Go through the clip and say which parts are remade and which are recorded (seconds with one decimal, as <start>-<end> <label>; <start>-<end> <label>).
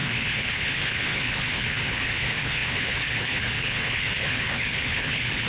0.0-5.5 remade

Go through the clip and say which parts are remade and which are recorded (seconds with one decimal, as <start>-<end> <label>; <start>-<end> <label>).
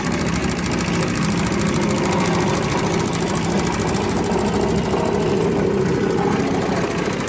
0.0-7.3 recorded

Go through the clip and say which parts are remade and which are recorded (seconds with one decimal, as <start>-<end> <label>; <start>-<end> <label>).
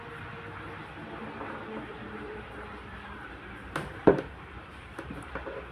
0.0-1.9 recorded; 1.9-5.3 remade; 5.3-5.7 recorded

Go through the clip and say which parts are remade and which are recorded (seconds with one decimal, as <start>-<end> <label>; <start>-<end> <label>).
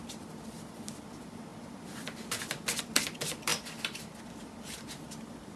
0.0-5.6 remade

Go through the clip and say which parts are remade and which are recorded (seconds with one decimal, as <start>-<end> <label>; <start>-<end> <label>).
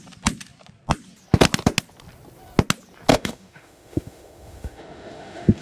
0.0-3.1 recorded; 3.1-5.6 remade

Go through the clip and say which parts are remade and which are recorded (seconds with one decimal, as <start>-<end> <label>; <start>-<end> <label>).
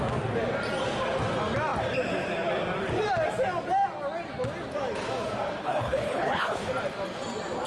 0.0-5.6 recorded; 5.6-6.7 remade; 6.7-7.7 recorded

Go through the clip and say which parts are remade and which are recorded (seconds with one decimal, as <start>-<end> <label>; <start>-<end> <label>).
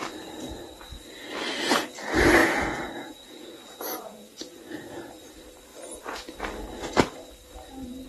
0.0-2.4 recorded; 2.4-5.1 remade; 5.1-8.1 recorded